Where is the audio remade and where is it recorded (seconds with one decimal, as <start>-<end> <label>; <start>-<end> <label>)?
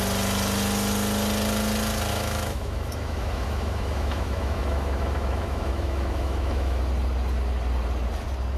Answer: 0.0-2.1 recorded; 2.1-6.8 remade; 6.8-8.6 recorded